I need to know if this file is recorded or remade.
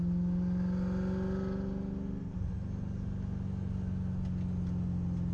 recorded